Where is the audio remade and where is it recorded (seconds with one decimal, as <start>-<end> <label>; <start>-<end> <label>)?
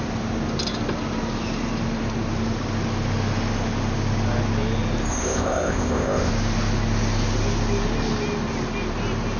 0.0-5.1 recorded; 5.1-6.3 remade; 6.3-9.4 recorded